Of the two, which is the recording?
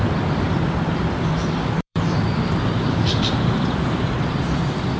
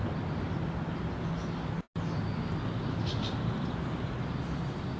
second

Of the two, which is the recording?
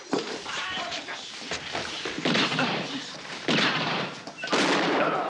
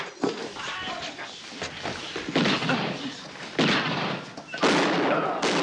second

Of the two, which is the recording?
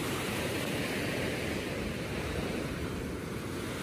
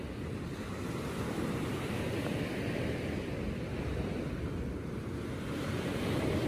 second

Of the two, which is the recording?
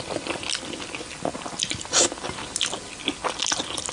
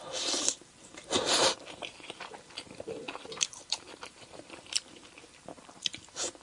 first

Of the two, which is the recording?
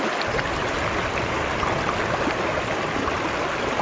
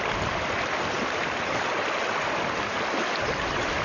first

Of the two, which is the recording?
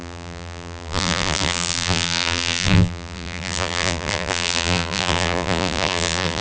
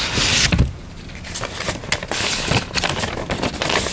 second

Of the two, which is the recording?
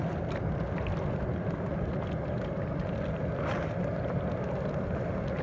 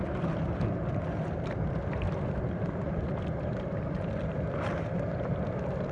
first